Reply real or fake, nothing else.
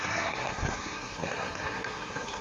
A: fake